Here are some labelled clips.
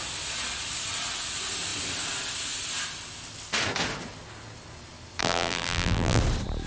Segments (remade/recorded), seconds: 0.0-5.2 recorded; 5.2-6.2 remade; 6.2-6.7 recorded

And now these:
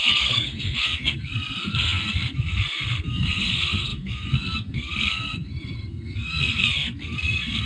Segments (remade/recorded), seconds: 0.0-7.7 remade

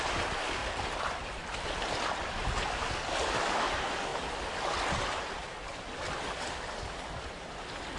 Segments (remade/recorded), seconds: 0.0-8.0 recorded

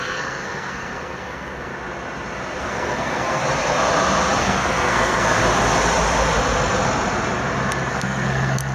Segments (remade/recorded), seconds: 0.0-1.7 remade; 1.7-2.6 recorded; 2.6-3.4 remade; 3.4-4.4 recorded; 4.4-5.4 remade; 5.4-7.9 recorded; 7.9-8.7 remade